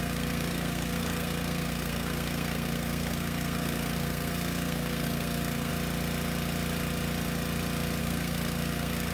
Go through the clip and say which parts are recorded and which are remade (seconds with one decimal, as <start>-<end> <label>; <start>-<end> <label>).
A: 0.0-5.7 remade; 5.7-8.0 recorded; 8.0-9.1 remade